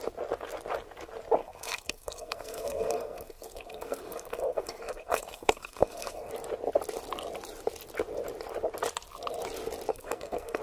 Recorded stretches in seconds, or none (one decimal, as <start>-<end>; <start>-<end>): 0.0-1.4; 6.3-9.9